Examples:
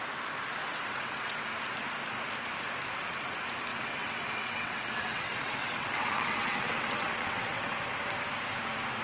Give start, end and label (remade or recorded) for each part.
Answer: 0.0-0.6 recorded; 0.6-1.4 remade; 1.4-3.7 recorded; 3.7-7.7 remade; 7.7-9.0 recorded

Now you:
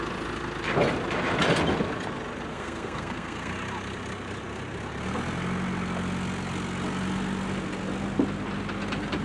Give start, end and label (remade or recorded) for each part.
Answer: 0.0-2.5 recorded; 2.5-3.5 remade; 3.5-9.2 recorded

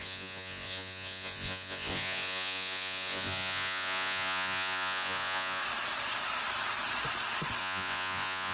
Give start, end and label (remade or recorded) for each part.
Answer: 0.0-5.6 remade; 5.6-7.6 recorded; 7.6-8.5 remade

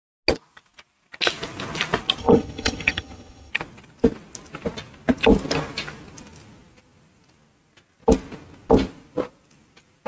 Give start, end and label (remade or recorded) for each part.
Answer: 0.0-2.2 recorded; 2.2-3.5 remade; 3.5-10.1 recorded

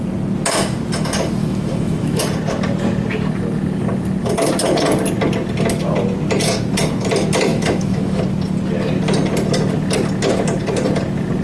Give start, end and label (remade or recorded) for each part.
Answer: 0.0-1.4 recorded; 1.4-2.2 remade; 2.2-7.5 recorded; 7.5-8.2 remade; 8.2-11.4 recorded